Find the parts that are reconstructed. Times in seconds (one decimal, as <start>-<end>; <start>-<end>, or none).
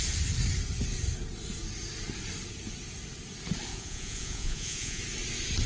3.7-5.0